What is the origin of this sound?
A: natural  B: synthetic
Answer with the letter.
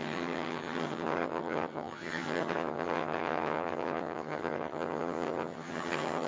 B